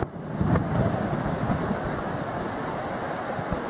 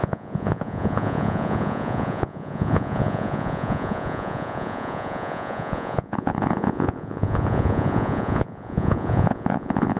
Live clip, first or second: first